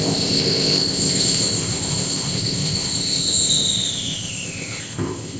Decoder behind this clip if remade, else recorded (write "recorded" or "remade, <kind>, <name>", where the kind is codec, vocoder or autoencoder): remade, codec, ZipCodec